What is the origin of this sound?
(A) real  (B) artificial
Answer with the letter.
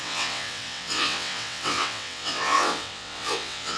B